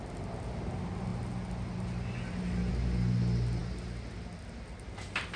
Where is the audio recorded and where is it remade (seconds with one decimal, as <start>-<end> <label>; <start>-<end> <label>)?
0.0-5.4 recorded